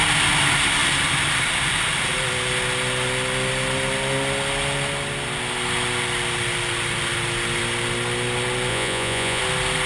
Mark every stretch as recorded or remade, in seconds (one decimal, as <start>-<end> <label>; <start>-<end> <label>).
0.0-8.7 recorded; 8.7-9.4 remade; 9.4-9.9 recorded